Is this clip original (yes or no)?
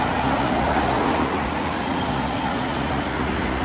no